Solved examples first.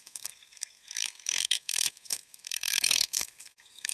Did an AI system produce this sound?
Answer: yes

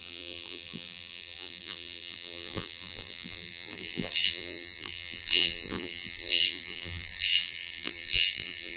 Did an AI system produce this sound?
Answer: yes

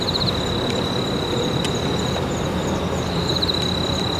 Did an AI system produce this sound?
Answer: no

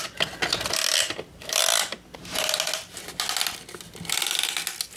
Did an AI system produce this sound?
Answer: no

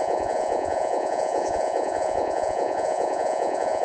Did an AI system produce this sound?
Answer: yes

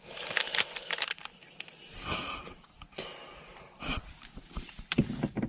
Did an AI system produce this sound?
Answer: yes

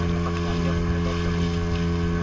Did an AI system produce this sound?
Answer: no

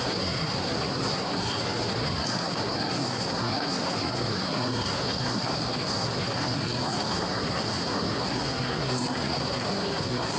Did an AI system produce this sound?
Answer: yes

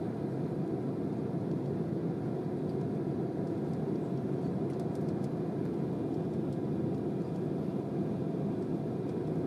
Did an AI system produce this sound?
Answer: no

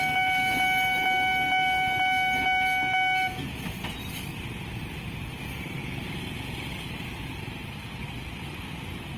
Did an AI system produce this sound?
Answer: no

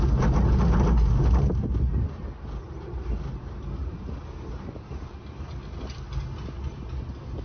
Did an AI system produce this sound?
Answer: no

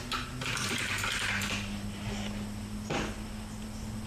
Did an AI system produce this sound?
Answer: no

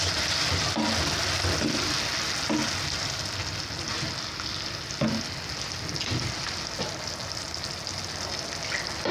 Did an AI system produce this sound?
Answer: no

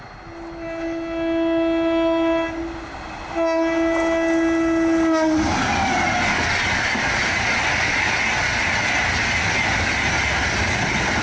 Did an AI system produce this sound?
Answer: no